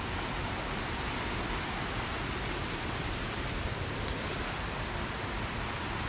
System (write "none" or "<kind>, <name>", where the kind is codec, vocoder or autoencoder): none